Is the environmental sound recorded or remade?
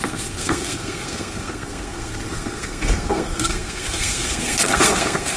remade